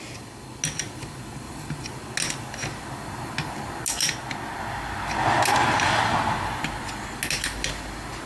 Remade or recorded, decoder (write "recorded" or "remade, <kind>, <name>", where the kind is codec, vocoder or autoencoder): recorded